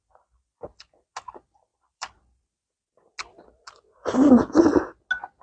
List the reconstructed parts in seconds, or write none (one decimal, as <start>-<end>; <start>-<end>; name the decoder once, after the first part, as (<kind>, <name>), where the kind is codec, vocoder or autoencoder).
1.7-2.2 (vocoder, BigVGAN v2); 3.3-4.3